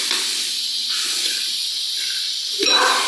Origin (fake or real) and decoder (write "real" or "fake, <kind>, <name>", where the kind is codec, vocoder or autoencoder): real